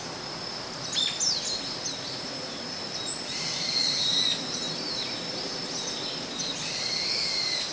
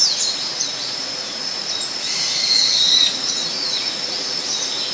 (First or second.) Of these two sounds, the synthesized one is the second